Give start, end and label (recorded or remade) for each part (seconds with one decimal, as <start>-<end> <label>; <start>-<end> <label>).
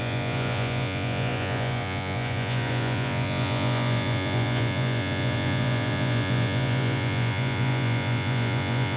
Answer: 0.0-9.0 remade